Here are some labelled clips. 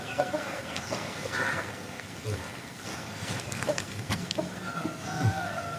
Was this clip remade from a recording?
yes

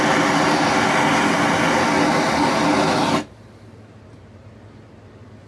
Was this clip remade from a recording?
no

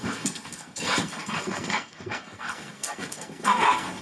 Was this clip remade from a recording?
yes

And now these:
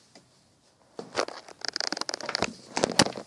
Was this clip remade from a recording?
no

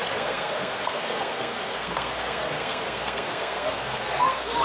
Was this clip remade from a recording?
yes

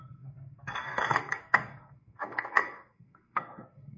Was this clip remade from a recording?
yes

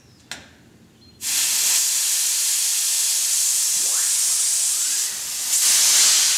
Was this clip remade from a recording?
no